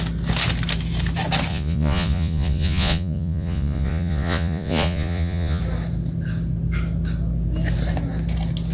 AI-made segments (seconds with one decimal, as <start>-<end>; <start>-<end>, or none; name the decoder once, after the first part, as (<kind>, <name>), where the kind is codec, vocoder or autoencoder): 1.5-5.6 (vocoder, Vocos)

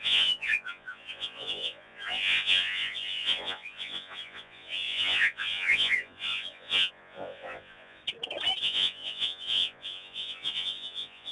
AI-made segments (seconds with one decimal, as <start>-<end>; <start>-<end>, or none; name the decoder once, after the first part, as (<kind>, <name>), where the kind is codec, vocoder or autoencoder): 0.0-8.0 (vocoder, Vocos); 8.6-11.3

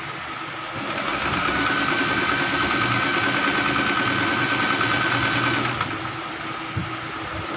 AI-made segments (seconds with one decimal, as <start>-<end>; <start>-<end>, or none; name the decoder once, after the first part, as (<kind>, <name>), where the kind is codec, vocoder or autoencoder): none

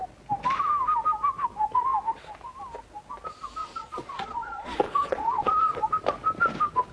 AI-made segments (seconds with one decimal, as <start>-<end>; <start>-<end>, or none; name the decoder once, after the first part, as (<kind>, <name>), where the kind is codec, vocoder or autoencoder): 3.6-5.8 (vocoder, Vocos)

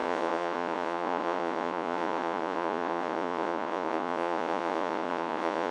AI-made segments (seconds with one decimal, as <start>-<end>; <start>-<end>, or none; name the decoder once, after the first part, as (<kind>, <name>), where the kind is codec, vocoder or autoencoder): 0.0-5.7 (vocoder, Vocos)

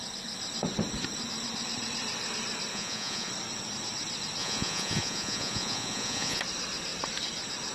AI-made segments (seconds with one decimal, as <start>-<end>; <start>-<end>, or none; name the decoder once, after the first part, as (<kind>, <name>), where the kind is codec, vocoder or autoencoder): 2.7-3.3 (vocoder, Vocos); 4.4-6.4